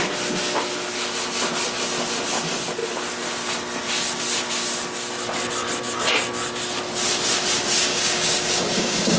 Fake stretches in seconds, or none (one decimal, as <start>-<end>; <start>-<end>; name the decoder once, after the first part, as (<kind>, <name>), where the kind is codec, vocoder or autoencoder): 7.9-9.2 (codec, DAC)